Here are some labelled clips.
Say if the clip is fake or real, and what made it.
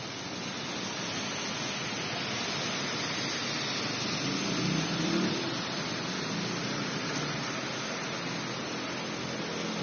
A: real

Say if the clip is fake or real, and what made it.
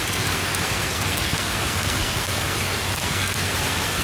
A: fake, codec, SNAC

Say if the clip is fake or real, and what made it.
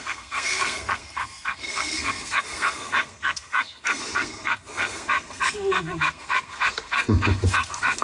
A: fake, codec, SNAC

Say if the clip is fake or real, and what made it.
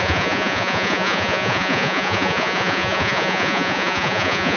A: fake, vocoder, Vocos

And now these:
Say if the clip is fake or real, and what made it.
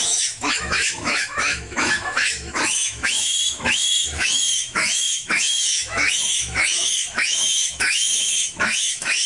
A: fake, autoencoder, DAC-VAE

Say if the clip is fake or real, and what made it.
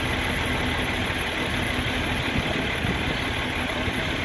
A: real